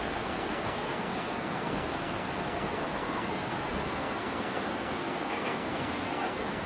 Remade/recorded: remade